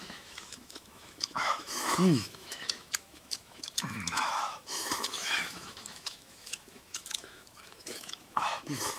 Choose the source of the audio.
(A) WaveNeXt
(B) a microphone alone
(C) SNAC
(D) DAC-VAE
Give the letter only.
D